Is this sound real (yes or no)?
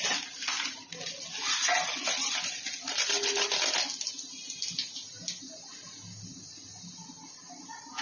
yes